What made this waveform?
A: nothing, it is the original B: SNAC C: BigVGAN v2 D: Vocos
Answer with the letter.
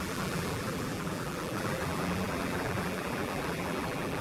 C